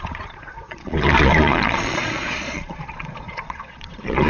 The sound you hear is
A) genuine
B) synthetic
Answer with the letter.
B